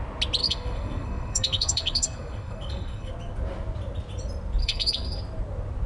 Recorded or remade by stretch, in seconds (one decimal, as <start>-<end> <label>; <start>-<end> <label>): 0.0-0.4 recorded; 0.4-3.1 remade; 3.1-4.6 recorded; 4.6-5.2 remade; 5.2-5.9 recorded